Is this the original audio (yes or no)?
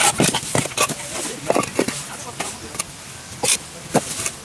yes